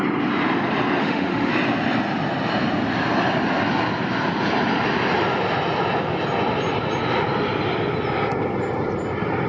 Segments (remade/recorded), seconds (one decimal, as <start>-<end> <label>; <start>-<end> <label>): 0.0-1.0 recorded; 1.0-1.5 remade; 1.5-9.5 recorded